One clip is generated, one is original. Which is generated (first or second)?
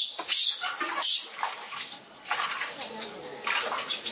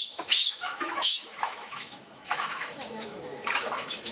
second